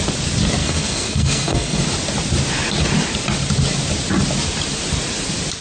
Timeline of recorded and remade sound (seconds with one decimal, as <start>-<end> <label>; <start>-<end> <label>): 0.0-0.6 recorded; 0.6-1.8 remade; 1.8-5.6 recorded

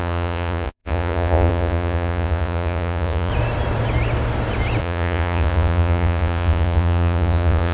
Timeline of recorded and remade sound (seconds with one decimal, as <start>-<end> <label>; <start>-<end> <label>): 0.0-3.3 remade; 3.3-4.8 recorded; 4.8-7.7 remade

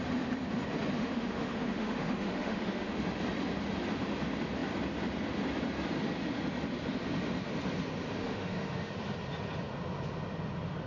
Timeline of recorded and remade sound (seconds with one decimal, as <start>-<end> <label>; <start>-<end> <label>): 0.0-1.0 recorded; 1.0-2.9 remade; 2.9-8.2 recorded; 8.2-8.9 remade; 8.9-10.9 recorded

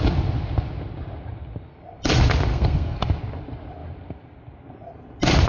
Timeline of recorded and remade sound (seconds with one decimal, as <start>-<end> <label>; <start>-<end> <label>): 0.0-2.5 recorded; 2.5-3.0 remade; 3.0-5.5 recorded